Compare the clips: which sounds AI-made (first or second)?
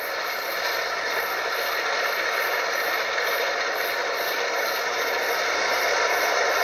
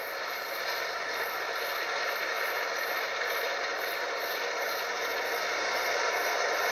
first